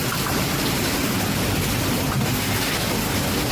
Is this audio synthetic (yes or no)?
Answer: no